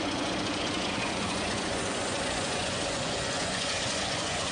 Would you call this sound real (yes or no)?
no